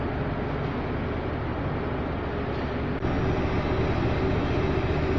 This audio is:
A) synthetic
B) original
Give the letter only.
B